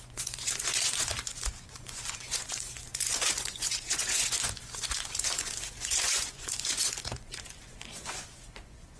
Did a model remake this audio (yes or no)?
yes